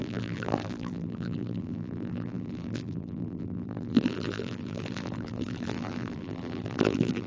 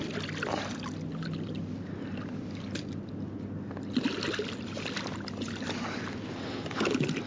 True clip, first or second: second